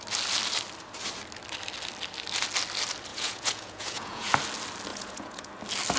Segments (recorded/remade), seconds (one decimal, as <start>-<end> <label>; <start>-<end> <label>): 0.0-3.1 recorded; 3.1-4.3 remade; 4.3-4.9 recorded; 4.9-5.5 remade; 5.5-6.0 recorded